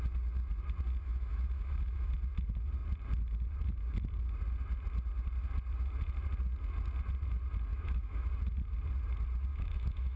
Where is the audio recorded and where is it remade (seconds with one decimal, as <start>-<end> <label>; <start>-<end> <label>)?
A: 0.0-1.0 recorded; 1.0-2.1 remade; 2.1-7.7 recorded; 7.7-8.3 remade; 8.3-9.5 recorded; 9.5-10.2 remade